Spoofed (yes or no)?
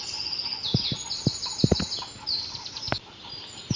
no